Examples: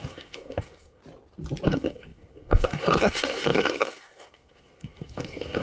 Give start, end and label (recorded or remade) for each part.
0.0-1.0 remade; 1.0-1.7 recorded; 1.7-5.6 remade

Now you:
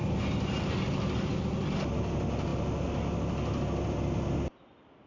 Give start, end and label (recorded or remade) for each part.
0.0-5.1 recorded

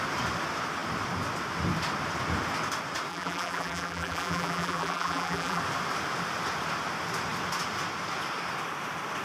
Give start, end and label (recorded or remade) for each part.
0.0-3.1 recorded; 3.1-5.6 remade; 5.6-9.2 recorded

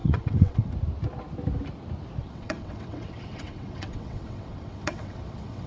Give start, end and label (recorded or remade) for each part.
0.0-0.7 remade; 0.7-2.2 recorded; 2.2-5.7 remade

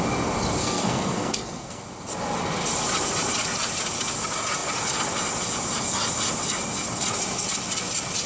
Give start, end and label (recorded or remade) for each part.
0.0-0.6 recorded; 0.6-1.8 remade; 1.8-8.3 recorded

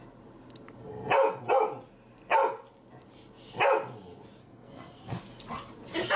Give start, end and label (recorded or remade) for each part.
0.0-4.4 recorded; 4.4-5.2 remade; 5.2-6.2 recorded

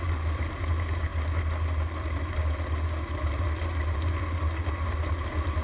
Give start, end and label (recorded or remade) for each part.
0.0-5.6 recorded

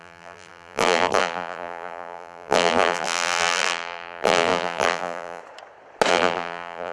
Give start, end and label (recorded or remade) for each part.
0.0-5.4 remade; 5.4-6.1 recorded; 6.1-6.9 remade